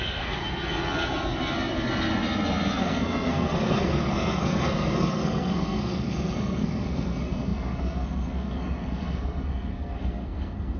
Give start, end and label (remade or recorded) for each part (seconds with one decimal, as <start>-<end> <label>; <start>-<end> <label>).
0.0-0.4 remade; 0.4-2.8 recorded; 2.8-10.8 remade